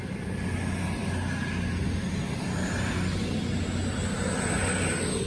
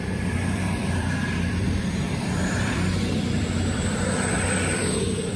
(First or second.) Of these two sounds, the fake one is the second